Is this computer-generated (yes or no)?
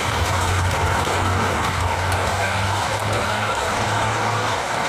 yes